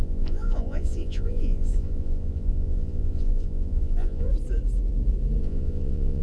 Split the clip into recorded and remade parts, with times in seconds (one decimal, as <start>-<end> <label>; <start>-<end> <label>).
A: 0.0-4.3 remade; 4.3-5.4 recorded; 5.4-6.2 remade